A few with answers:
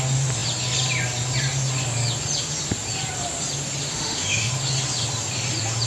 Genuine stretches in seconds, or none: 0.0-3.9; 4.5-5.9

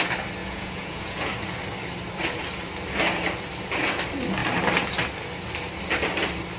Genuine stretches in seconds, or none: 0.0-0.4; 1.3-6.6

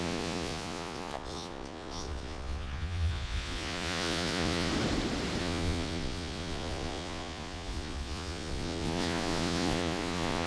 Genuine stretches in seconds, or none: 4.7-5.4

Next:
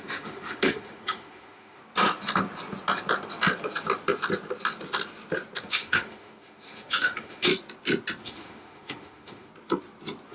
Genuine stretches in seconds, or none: 1.8-5.6; 7.5-8.2; 9.5-10.3

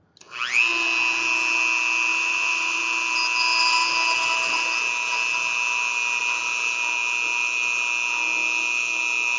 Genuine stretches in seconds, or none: 0.0-2.1; 2.8-9.4

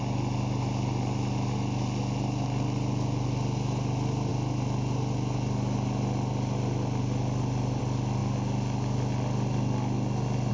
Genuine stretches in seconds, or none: 0.0-10.5

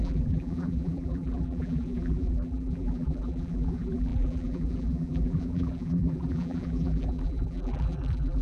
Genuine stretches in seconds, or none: none